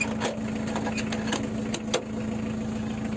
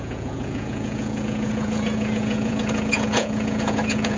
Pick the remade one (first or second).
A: second